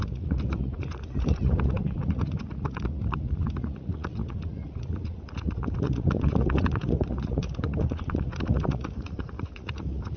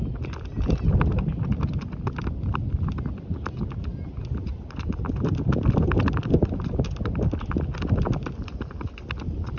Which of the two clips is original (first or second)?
second